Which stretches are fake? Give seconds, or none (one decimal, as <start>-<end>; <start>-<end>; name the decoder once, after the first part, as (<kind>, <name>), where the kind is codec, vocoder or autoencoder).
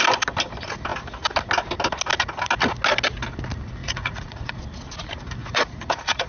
3.8-4.6 (vocoder, Vocos); 5.4-6.3